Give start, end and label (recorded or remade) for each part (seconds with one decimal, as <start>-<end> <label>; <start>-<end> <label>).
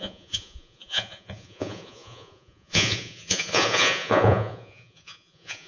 0.0-5.7 remade